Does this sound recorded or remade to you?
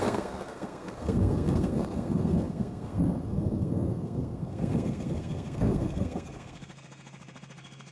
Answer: remade